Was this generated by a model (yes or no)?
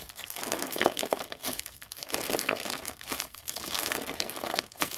yes